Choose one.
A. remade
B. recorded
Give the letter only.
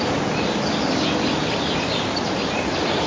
B